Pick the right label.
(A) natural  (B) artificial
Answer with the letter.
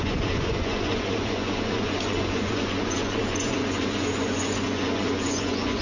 B